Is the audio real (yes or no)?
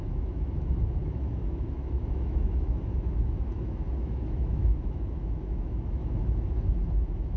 no